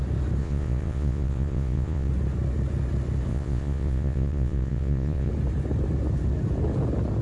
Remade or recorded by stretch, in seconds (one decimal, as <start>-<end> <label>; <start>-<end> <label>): 0.0-0.4 recorded; 0.4-2.1 remade; 2.1-3.3 recorded; 3.3-5.3 remade; 5.3-7.2 recorded